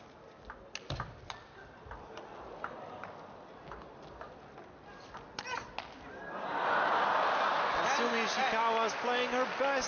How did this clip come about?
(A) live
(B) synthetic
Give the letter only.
A